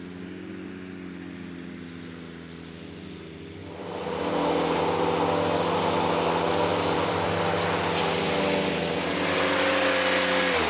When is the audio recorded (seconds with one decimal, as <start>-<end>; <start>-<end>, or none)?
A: 0.0-3.6; 4.8-6.7; 7.3-10.7